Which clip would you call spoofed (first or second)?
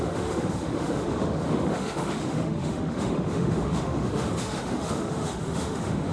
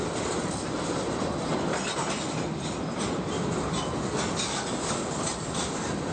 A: first